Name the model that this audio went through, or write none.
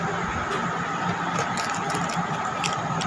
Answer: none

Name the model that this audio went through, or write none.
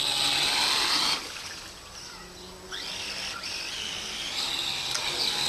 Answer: none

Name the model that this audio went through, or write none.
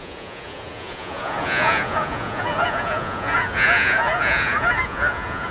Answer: vocoder, Vocos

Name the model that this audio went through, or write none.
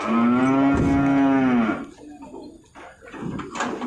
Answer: none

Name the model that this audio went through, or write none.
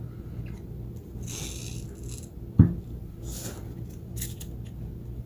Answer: none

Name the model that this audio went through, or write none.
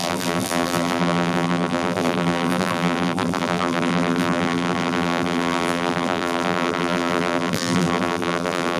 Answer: vocoder, BigVGAN v2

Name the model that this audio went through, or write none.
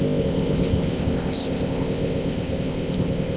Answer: codec, ZipCodec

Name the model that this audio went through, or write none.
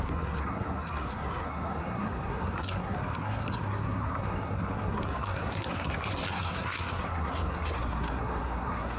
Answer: codec, SNAC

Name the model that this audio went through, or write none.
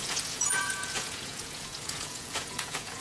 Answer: vocoder, Vocos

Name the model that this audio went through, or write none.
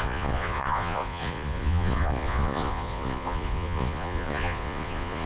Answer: vocoder, Vocos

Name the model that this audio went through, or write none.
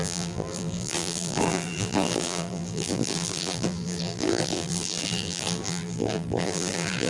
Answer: vocoder, BigVGAN v2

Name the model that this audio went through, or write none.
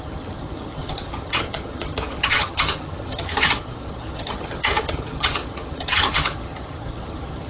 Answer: vocoder, HiFi-GAN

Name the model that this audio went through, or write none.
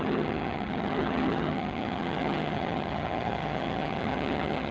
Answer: vocoder, HiFi-GAN